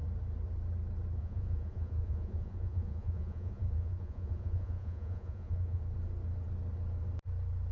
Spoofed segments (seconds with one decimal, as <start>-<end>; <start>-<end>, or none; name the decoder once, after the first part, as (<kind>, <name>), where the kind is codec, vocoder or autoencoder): 1.2-5.8 (vocoder, Vocos)